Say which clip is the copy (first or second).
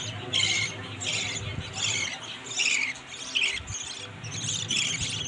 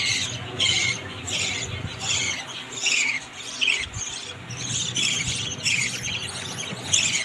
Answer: second